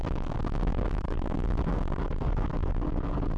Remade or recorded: remade